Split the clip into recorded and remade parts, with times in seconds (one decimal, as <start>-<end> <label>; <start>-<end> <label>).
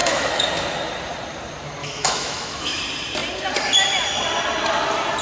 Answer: 0.0-0.5 remade; 0.5-1.8 recorded; 1.8-2.8 remade; 2.8-5.2 recorded